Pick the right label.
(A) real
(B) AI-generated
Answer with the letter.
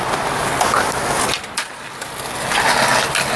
A